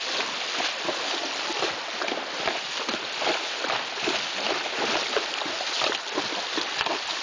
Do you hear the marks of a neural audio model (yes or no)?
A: no